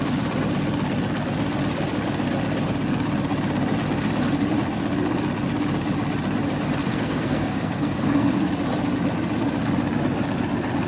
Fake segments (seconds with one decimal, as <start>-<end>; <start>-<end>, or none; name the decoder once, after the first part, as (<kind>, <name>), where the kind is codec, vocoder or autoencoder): 6.9-8.5 (codec, SNAC)